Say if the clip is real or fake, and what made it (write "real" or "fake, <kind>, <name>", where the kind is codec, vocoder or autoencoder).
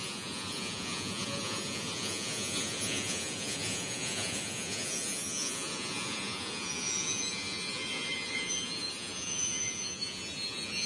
fake, vocoder, Vocos